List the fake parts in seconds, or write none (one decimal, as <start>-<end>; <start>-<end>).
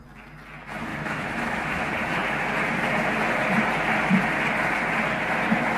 0.9-1.8